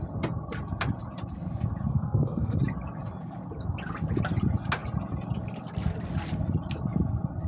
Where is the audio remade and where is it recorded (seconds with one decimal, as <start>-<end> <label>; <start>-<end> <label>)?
0.0-1.9 recorded; 1.9-2.6 remade; 2.6-7.5 recorded